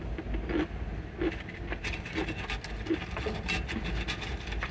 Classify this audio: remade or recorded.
recorded